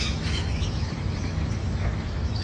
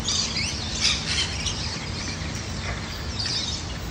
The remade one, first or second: first